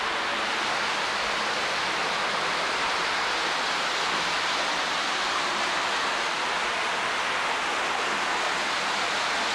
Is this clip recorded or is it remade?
recorded